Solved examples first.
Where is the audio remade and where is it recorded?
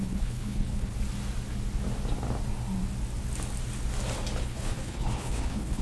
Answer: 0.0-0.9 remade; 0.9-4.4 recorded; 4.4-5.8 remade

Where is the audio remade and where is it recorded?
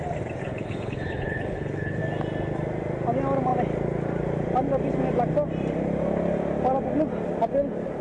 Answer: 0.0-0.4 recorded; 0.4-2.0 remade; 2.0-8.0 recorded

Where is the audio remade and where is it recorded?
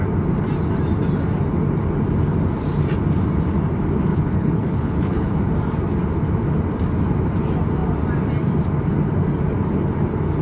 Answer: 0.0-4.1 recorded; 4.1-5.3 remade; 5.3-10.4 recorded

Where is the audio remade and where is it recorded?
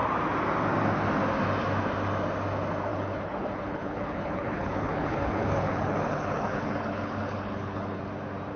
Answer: 0.0-2.9 recorded; 2.9-8.0 remade; 8.0-8.6 recorded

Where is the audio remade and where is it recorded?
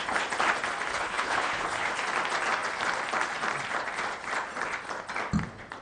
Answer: 0.0-0.9 recorded; 0.9-1.9 remade; 1.9-5.8 recorded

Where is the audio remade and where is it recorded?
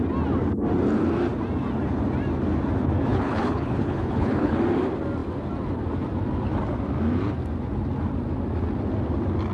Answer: 0.0-3.1 recorded; 3.1-4.6 remade; 4.6-9.5 recorded